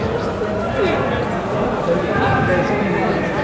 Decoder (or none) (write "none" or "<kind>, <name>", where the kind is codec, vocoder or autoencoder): none